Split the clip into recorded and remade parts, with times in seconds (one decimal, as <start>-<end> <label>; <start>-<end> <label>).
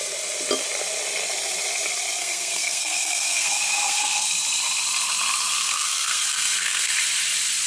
0.0-2.2 recorded; 2.2-4.3 remade; 4.3-5.6 recorded; 5.6-6.9 remade; 6.9-7.7 recorded